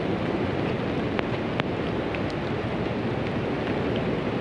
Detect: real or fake real